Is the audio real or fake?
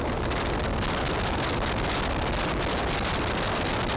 real